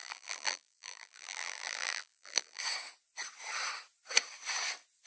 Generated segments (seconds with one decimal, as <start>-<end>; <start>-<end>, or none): 0.0-2.6